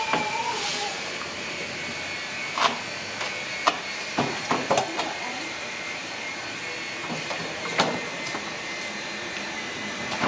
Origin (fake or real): fake